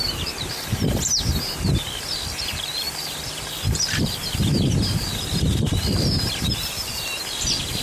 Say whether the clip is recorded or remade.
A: recorded